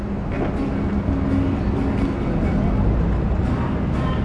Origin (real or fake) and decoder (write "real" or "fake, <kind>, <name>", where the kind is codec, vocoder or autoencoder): real